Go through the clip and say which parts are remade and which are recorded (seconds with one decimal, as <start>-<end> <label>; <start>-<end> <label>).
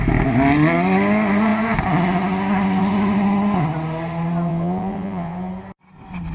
0.0-4.5 recorded; 4.5-5.5 remade; 5.5-6.3 recorded